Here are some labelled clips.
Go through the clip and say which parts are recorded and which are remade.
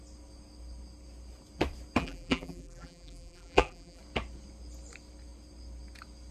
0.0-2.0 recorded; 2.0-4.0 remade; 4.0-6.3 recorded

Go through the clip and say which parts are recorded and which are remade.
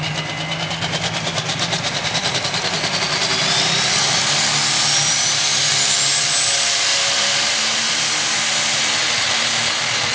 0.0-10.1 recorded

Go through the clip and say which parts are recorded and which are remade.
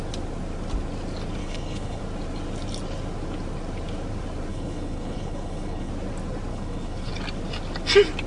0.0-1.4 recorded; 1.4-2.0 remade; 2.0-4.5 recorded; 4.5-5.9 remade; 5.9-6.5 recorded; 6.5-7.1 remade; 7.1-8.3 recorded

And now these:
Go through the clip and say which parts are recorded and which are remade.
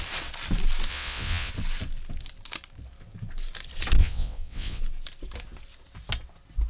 0.0-0.9 recorded; 0.9-1.5 remade; 1.5-4.0 recorded; 4.0-4.8 remade; 4.8-6.7 recorded